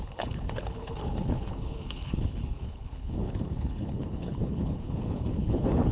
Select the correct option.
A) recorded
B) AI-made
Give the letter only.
B